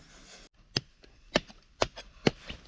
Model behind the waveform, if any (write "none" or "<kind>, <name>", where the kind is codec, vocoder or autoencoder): none